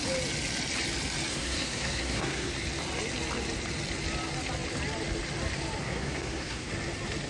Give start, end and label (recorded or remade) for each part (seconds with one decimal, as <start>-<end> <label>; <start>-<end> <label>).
0.0-1.3 recorded; 1.3-2.5 remade; 2.5-5.8 recorded; 5.8-6.7 remade; 6.7-7.3 recorded